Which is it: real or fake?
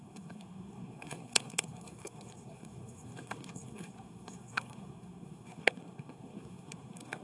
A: fake